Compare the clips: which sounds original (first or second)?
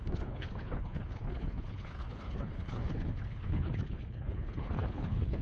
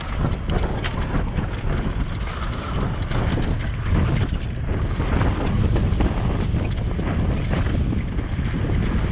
second